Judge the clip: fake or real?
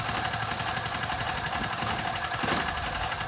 real